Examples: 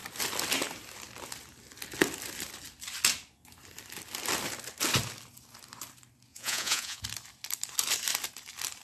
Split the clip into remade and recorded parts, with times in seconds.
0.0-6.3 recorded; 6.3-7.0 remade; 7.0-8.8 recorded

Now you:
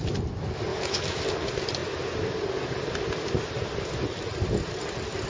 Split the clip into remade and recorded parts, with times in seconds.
0.0-0.7 recorded; 0.7-1.2 remade; 1.2-5.3 recorded

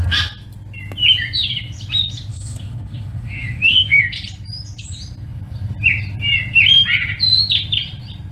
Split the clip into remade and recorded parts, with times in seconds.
0.0-2.3 recorded; 2.3-4.0 remade; 4.0-8.3 recorded

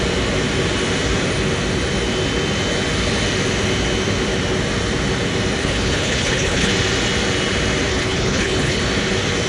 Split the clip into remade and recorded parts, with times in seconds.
0.0-5.6 recorded; 5.6-6.7 remade; 6.7-7.9 recorded; 7.9-8.8 remade; 8.8-9.5 recorded